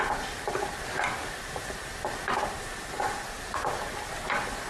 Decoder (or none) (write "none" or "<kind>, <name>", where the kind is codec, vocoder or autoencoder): none